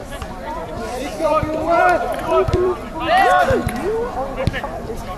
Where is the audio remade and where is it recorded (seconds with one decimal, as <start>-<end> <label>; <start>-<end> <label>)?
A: 0.0-3.0 remade; 3.0-5.2 recorded